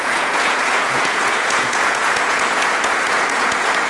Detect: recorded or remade remade